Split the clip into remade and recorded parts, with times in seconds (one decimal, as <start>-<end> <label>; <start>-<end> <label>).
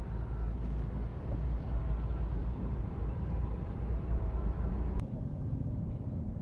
0.0-1.1 recorded; 1.1-1.8 remade; 1.8-2.4 recorded; 2.4-6.4 remade